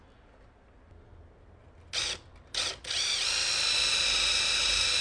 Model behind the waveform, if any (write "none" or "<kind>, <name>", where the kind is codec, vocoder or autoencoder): none